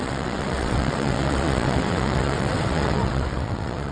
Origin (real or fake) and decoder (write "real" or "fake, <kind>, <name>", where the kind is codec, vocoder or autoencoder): fake, vocoder, WaveNeXt